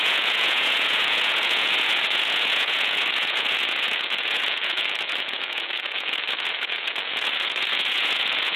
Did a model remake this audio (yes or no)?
yes